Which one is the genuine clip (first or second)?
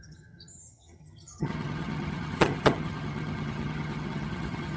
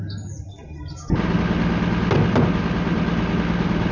second